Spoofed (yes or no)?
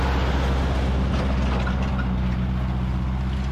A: no